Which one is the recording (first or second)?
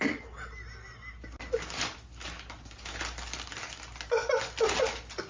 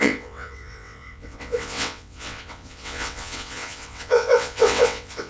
first